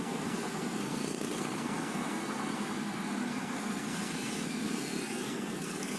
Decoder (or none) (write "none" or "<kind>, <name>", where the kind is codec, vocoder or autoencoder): codec, SNAC